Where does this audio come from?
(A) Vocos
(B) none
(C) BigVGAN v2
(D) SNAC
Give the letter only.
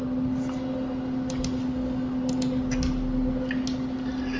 B